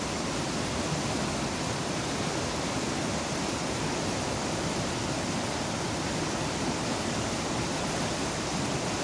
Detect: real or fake real